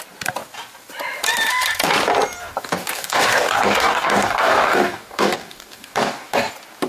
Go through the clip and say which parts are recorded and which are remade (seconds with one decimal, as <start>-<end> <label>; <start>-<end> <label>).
0.0-2.4 recorded; 2.4-6.5 remade; 6.5-6.9 recorded

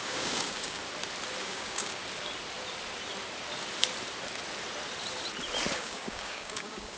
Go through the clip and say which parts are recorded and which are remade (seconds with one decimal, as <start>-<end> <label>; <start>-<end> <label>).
0.0-0.8 remade; 0.8-1.4 recorded; 1.4-2.0 remade; 2.0-5.7 recorded; 5.7-7.0 remade

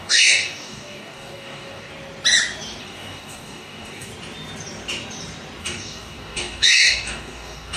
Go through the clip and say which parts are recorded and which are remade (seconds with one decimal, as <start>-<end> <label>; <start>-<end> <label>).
0.0-1.9 remade; 1.9-2.8 recorded; 2.8-4.1 remade; 4.1-5.6 recorded; 5.6-7.8 remade

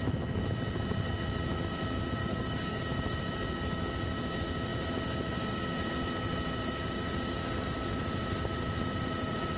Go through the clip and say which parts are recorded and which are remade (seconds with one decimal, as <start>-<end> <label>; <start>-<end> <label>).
0.0-2.2 recorded; 2.2-2.8 remade; 2.8-9.6 recorded

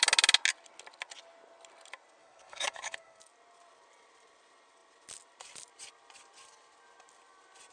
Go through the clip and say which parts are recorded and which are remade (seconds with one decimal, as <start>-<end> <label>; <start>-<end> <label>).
0.0-2.2 recorded; 2.2-3.2 remade; 3.2-7.7 recorded

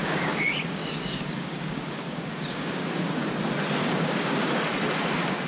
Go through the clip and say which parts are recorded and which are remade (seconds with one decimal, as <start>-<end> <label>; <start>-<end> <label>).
0.0-3.3 remade; 3.3-3.8 recorded; 3.8-4.5 remade; 4.5-5.5 recorded

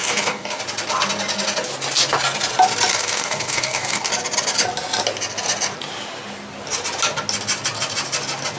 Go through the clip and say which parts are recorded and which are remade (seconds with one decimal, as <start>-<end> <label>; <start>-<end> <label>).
0.0-0.6 remade; 0.6-2.9 recorded; 2.9-4.1 remade; 4.1-8.6 recorded

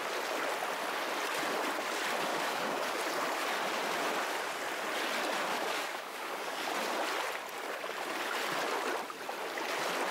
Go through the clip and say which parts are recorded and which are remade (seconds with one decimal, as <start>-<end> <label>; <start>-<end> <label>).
0.0-2.3 recorded; 2.3-3.0 remade; 3.0-5.5 recorded; 5.5-6.7 remade; 6.7-10.1 recorded